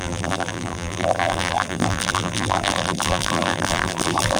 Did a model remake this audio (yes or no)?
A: yes